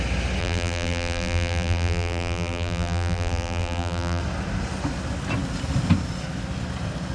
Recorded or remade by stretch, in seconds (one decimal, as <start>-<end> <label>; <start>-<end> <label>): 0.0-0.4 recorded; 0.4-4.2 remade; 4.2-7.1 recorded